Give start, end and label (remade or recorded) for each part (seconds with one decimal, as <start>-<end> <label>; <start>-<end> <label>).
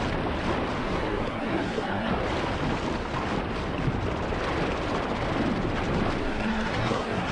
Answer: 0.0-0.8 recorded; 0.8-2.1 remade; 2.1-6.2 recorded; 6.2-7.3 remade